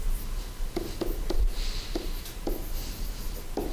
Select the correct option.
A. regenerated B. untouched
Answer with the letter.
B